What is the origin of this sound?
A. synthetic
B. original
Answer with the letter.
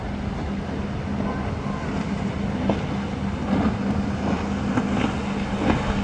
B